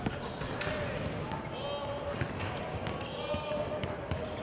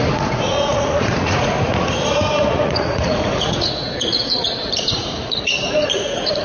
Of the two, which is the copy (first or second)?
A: second